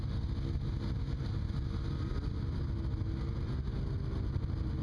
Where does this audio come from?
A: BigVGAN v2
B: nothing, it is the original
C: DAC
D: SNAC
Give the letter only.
B